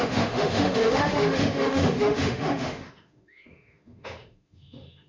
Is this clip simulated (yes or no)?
yes